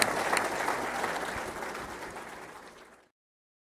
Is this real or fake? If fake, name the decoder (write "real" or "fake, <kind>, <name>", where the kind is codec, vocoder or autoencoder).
real